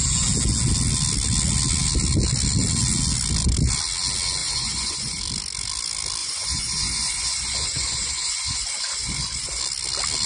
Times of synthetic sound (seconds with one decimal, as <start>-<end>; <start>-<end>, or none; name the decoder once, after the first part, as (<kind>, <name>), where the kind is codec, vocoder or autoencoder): 4.4-5.2 (vocoder, Vocos); 6.2-9.6